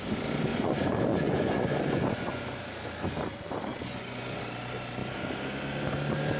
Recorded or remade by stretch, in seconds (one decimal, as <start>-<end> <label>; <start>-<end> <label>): 0.0-0.5 recorded; 0.5-2.6 remade; 2.6-3.7 recorded; 3.7-4.4 remade; 4.4-6.4 recorded

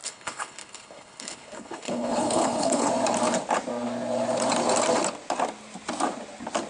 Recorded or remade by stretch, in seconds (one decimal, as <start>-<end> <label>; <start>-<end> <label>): 0.0-2.9 remade; 2.9-6.7 recorded

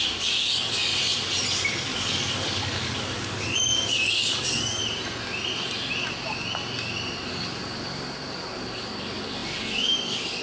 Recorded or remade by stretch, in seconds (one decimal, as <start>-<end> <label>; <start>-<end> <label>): 0.0-0.9 remade; 0.9-1.7 recorded; 1.7-4.8 remade; 4.8-7.3 recorded; 7.3-10.4 remade